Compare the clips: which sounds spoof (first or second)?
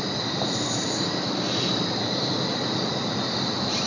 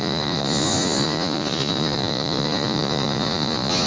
second